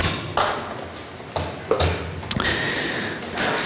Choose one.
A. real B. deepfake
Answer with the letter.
A